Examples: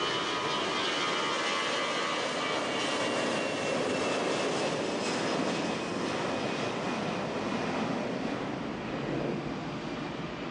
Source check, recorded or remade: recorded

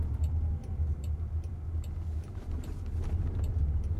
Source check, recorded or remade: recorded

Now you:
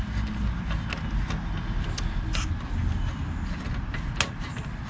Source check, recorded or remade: recorded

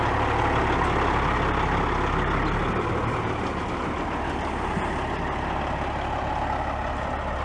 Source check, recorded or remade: recorded